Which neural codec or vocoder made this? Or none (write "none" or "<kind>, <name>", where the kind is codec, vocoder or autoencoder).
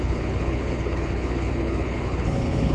codec, HILCodec